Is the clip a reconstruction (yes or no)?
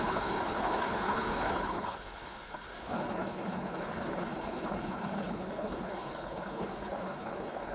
yes